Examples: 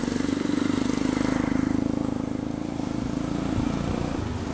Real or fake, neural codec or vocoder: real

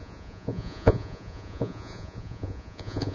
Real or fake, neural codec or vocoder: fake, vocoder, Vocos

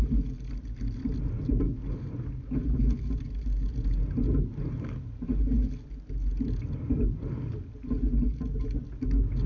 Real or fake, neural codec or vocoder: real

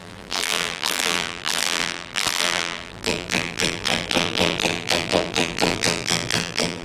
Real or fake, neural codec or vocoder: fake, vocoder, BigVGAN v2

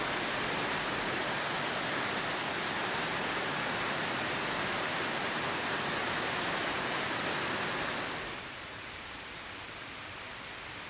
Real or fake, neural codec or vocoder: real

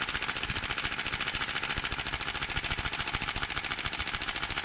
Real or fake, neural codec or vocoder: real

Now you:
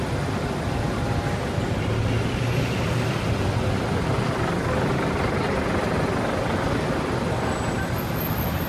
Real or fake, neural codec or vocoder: real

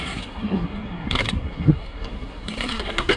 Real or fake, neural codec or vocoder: fake, codec, SNAC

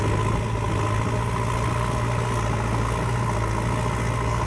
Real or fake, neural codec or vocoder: real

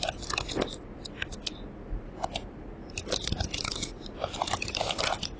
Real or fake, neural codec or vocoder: real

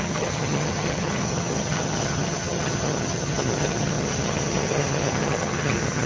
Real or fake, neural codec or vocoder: fake, vocoder, HiFi-GAN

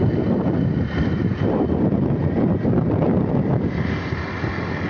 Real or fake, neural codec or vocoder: real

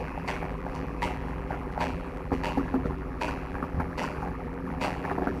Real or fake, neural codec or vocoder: fake, vocoder, BigVGAN v2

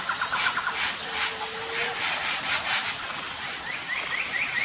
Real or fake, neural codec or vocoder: real